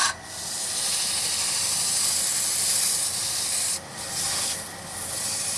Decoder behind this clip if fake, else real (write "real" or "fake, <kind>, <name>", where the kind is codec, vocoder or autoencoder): real